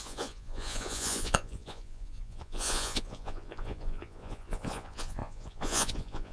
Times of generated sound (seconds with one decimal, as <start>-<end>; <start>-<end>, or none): 0.0-6.3